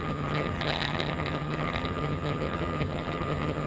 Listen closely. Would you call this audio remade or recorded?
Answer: remade